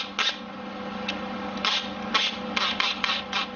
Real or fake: real